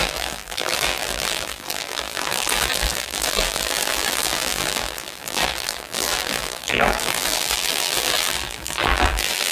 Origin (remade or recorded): remade